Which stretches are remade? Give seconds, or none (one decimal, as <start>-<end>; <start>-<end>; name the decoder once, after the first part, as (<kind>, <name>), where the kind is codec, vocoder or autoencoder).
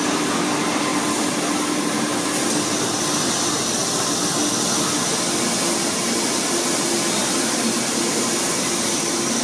none